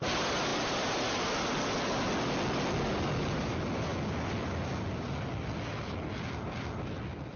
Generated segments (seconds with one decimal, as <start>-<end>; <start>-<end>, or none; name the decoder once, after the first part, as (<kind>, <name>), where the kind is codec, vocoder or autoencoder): none